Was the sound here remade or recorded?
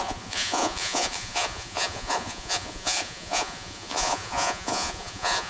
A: remade